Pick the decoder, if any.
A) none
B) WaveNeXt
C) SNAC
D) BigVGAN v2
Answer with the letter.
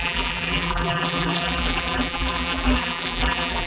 D